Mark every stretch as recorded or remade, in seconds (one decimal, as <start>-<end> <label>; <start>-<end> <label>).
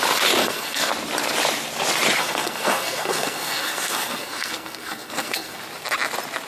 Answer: 0.0-0.4 recorded; 0.4-0.9 remade; 0.9-2.2 recorded; 2.2-5.6 remade; 5.6-6.5 recorded